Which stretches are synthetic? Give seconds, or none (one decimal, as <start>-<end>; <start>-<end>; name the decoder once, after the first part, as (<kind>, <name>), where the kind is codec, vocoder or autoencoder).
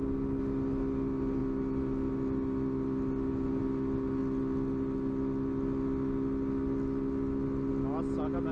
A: none